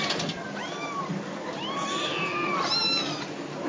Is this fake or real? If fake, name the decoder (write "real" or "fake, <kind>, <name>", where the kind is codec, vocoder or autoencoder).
real